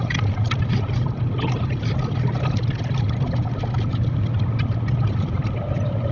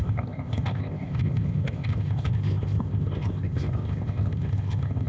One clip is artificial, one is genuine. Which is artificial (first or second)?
second